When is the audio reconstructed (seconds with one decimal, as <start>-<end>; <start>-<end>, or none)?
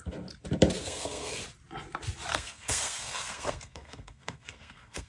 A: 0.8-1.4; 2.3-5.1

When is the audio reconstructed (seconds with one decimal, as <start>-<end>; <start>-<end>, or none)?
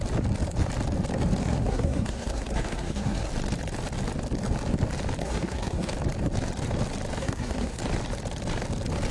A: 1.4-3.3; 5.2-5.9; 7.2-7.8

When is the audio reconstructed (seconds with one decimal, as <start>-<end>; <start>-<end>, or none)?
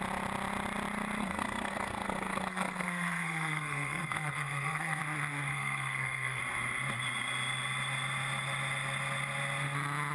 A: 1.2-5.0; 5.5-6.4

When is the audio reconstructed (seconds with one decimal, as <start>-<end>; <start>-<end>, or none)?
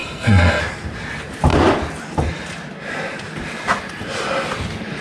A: 0.0-0.6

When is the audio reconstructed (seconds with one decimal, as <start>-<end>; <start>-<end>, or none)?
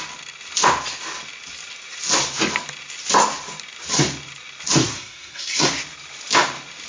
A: 4.8-5.7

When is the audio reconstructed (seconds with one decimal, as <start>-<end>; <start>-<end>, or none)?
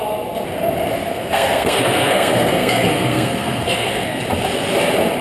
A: 1.1-4.2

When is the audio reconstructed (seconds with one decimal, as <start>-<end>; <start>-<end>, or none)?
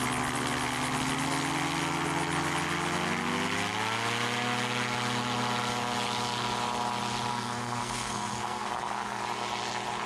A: 7.3-9.2